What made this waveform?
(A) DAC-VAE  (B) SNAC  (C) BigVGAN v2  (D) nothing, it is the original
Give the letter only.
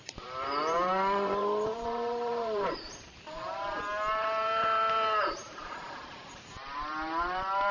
C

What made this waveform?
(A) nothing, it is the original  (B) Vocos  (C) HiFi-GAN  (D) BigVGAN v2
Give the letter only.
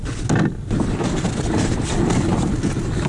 A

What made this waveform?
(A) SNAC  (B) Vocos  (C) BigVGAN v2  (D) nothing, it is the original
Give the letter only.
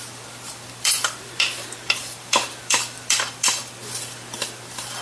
C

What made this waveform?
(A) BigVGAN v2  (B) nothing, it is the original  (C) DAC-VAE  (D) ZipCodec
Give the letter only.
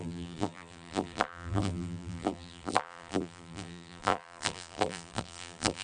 A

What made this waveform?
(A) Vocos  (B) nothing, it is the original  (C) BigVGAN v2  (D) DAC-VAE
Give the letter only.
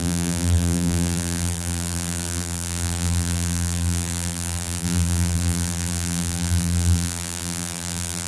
C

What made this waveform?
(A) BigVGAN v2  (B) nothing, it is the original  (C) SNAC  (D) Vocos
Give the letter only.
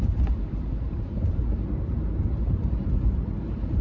A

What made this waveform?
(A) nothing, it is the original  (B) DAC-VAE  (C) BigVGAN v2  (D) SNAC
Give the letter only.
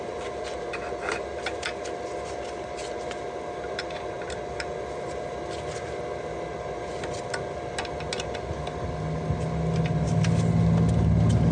A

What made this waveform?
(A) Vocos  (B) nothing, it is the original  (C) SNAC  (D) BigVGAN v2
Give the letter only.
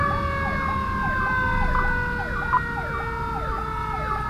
B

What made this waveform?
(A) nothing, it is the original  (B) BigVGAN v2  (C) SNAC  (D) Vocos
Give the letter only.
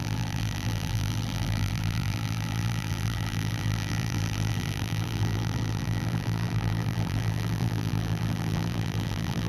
B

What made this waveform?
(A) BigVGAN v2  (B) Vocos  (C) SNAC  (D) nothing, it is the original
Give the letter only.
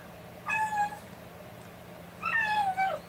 D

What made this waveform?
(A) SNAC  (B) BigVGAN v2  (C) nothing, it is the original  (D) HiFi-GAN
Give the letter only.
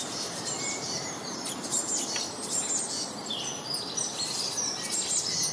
B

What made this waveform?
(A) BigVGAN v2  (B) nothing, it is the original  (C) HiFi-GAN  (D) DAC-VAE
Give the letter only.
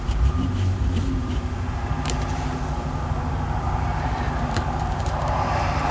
A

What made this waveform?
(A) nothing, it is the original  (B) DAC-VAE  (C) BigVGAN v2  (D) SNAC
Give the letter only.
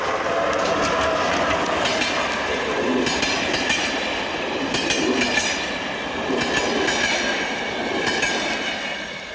A